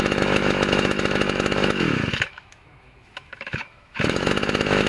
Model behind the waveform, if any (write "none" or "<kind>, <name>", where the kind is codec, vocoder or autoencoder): autoencoder, DAC-VAE